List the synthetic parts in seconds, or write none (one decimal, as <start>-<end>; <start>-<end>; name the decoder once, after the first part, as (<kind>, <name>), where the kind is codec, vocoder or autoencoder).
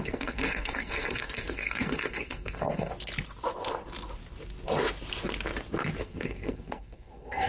0.0-2.9 (codec, SNAC); 6.0-7.5